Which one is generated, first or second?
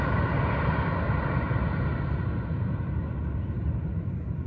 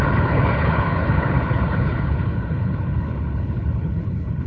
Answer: second